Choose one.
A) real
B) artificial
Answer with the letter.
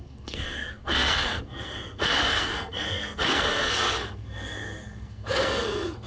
B